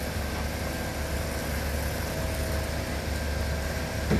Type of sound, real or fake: real